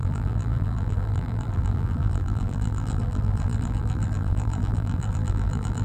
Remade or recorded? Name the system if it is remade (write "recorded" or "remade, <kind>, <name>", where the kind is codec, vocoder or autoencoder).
remade, vocoder, BigVGAN v2